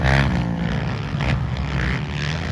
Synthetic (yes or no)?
no